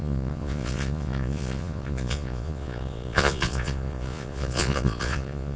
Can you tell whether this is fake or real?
fake